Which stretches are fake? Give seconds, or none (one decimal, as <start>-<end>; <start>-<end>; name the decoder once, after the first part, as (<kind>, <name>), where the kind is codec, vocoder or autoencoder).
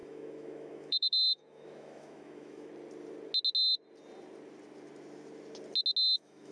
0.0-2.7 (autoencoder, DAC-VAE); 6.0-6.5